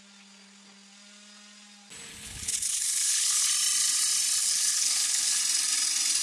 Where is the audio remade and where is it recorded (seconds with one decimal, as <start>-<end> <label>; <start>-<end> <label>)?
0.0-2.1 recorded; 2.1-3.5 remade; 3.5-4.4 recorded; 4.4-5.4 remade; 5.4-6.2 recorded